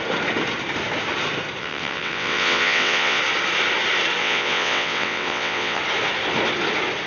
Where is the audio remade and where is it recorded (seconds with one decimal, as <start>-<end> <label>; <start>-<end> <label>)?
0.0-1.6 recorded; 1.6-3.2 remade; 3.2-4.2 recorded; 4.2-5.8 remade; 5.8-7.1 recorded